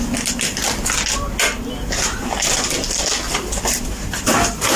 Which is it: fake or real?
real